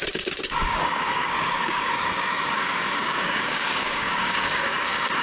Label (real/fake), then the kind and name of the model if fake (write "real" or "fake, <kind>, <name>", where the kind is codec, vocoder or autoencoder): fake, codec, DAC